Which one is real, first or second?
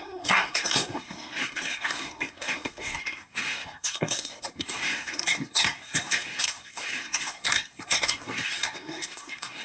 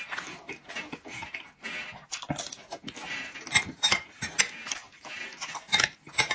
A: second